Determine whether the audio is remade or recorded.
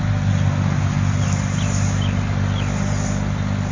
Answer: recorded